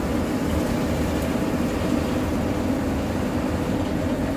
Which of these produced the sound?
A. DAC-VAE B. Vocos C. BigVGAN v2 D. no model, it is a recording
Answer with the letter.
D